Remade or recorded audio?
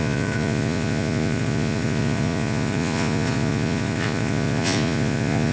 remade